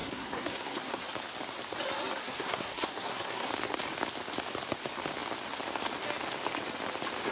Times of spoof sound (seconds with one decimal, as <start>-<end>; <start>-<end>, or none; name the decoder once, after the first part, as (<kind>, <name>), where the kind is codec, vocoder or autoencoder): 0.0-1.1 (codec, SNAC); 2.2-3.5

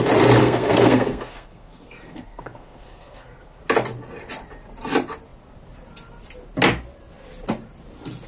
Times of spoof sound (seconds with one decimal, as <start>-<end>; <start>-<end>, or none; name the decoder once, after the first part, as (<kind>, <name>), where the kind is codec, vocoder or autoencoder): 0.4-3.6 (codec, SNAC)

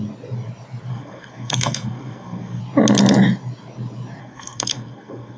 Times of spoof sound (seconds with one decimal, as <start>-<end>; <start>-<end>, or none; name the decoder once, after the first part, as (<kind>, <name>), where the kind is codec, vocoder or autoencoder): 0.9-2.6 (codec, SNAC); 4.2-5.4

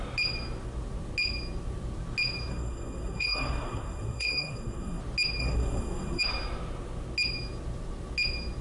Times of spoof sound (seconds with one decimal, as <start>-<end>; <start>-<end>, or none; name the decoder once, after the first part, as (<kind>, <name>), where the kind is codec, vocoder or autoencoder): 2.5-5.0 (codec, SNAC); 5.4-6.2

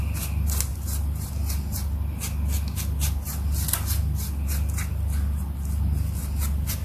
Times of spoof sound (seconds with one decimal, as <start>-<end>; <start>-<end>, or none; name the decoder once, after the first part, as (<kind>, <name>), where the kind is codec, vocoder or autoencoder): none

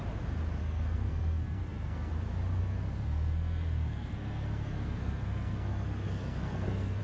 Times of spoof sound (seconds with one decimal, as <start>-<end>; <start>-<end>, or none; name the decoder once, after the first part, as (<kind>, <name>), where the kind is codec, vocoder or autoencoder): 0.6-2.1 (codec, SNAC); 2.6-7.0